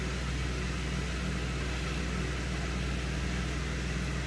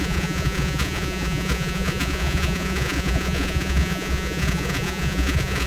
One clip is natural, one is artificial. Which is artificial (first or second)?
second